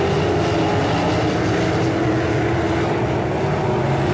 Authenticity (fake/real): real